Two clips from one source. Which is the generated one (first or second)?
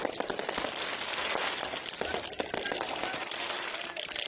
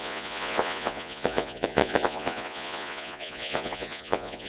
second